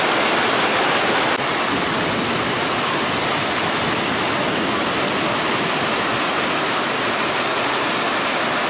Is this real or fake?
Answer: real